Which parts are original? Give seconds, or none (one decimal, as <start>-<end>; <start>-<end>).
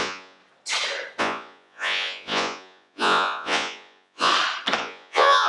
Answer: 0.4-1.2; 4.3-4.8